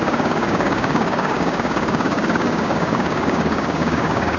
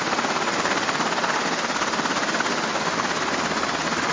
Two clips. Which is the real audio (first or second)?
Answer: second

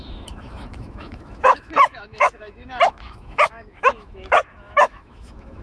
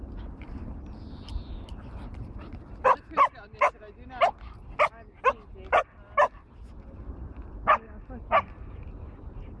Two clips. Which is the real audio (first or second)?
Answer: second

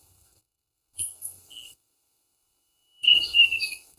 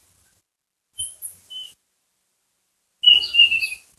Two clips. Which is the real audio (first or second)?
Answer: second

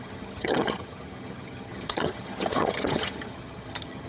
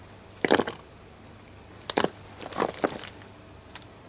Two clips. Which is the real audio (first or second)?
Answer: second